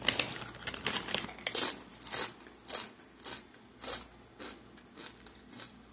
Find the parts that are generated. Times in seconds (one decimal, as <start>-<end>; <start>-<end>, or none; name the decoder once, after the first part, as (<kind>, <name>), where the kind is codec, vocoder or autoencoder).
none